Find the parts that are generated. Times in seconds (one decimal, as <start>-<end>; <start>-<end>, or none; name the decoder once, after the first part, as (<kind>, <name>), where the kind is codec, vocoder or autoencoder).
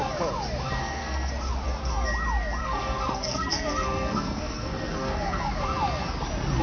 0.8-1.3 (codec, SNAC); 2.6-5.5